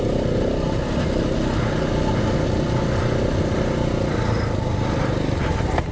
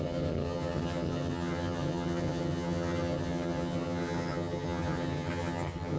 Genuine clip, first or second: first